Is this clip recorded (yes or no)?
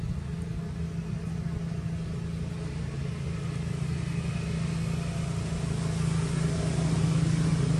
yes